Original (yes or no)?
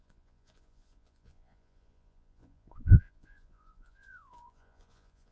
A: no